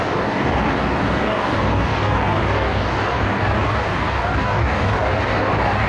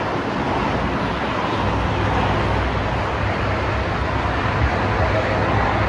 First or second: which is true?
second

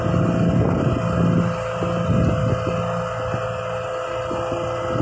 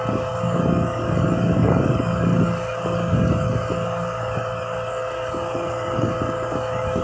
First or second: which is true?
first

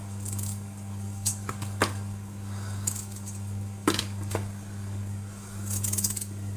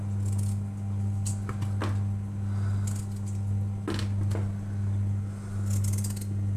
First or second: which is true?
second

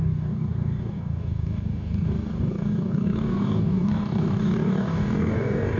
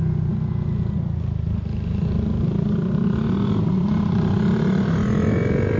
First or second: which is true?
second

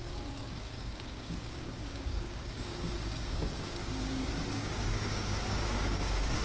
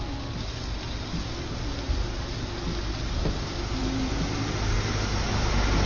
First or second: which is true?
second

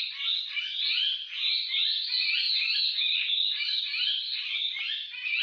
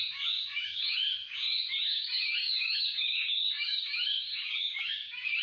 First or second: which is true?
first